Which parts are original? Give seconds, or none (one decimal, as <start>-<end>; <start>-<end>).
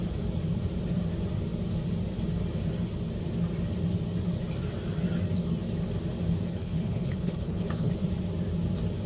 0.0-6.5; 7.9-9.1